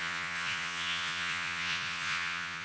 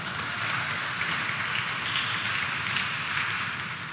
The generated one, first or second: first